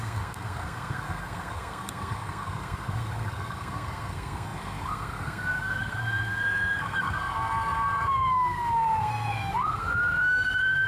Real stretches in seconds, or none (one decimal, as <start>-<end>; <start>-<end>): none